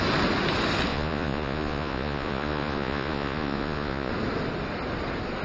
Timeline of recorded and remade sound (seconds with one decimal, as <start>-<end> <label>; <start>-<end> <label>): 0.0-0.9 recorded; 0.9-4.1 remade; 4.1-5.4 recorded